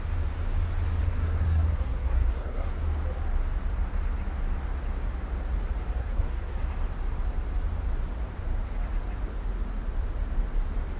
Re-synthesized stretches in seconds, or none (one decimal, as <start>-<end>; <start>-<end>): 1.0-2.8; 6.0-6.6